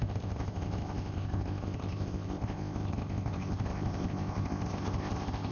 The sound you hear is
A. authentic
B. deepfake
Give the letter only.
B